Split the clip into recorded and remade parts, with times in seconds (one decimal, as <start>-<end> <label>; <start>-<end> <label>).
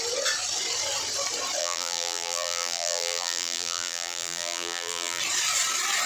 0.0-1.6 recorded; 1.6-5.2 remade; 5.2-6.1 recorded